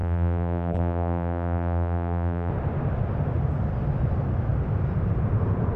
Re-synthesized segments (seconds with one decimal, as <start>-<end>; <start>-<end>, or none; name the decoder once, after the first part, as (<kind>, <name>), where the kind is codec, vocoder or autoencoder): 0.0-2.5 (vocoder, BigVGAN v2)